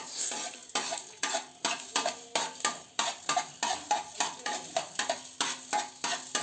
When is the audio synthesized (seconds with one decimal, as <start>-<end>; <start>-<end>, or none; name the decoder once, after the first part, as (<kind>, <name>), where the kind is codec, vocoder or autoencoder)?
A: none